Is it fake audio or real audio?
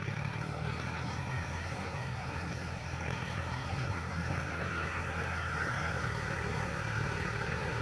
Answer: fake